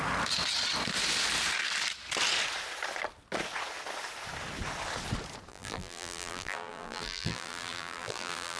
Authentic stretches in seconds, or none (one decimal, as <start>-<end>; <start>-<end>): 0.0-5.5